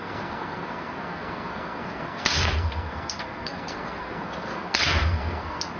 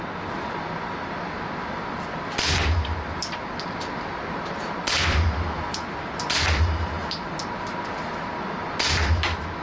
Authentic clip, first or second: second